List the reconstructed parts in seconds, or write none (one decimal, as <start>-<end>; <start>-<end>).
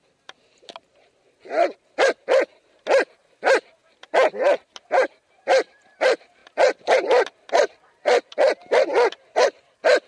none